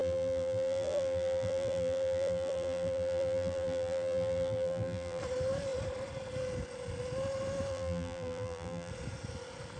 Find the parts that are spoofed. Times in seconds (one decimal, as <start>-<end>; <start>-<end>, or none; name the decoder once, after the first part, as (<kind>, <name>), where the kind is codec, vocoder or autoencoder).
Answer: 0.0-5.2 (vocoder, BigVGAN v2); 7.7-8.9